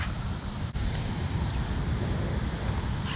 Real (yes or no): yes